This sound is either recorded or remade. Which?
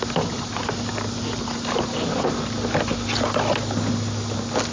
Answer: recorded